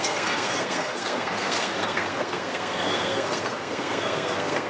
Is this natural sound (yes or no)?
no